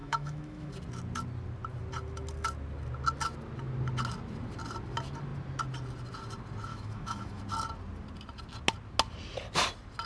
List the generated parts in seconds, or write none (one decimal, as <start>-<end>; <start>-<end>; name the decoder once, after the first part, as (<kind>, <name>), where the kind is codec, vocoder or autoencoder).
0.0-0.7 (autoencoder, DAC-VAE); 6.7-7.4

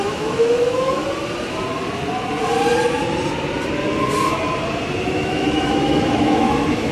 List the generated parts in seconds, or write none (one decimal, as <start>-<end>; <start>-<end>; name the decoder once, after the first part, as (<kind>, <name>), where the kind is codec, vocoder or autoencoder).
0.0-1.0 (autoencoder, DAC-VAE); 5.1-6.9